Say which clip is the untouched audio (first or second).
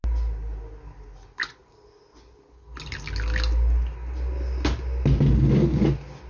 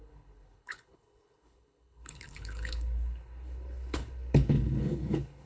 first